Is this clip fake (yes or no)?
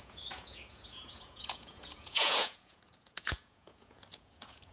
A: yes